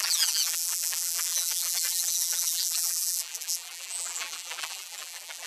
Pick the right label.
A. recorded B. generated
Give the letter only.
B